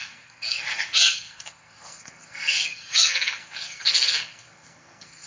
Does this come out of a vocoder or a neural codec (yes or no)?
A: yes